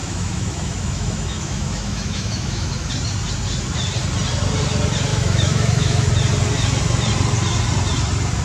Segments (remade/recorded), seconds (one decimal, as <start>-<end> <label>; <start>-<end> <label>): 0.0-2.9 remade; 2.9-5.1 recorded; 5.1-6.1 remade; 6.1-8.4 recorded